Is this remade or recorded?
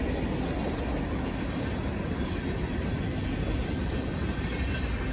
recorded